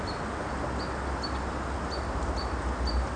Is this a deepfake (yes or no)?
no